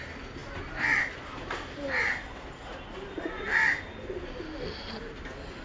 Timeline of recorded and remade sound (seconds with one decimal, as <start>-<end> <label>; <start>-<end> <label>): 0.0-5.6 recorded